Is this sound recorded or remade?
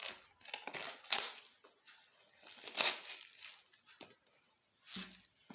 recorded